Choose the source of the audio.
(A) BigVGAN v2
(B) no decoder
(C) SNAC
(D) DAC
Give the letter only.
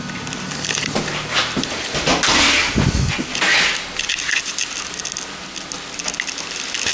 B